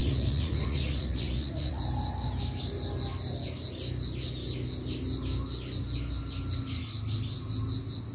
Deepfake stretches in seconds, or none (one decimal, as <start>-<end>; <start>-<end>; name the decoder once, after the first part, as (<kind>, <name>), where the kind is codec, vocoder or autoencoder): 0.0-1.8 (vocoder, Vocos)